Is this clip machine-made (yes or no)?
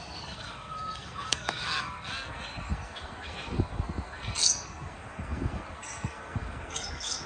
yes